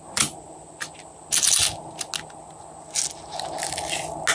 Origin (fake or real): real